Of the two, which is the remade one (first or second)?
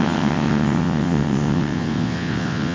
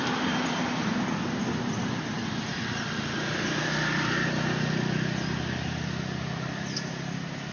first